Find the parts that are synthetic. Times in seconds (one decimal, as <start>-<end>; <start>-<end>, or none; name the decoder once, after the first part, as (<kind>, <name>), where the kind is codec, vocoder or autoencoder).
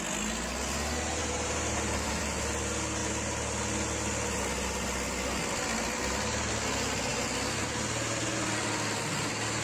1.2-2.2 (vocoder, BigVGAN v2)